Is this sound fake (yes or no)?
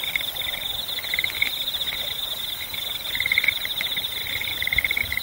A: no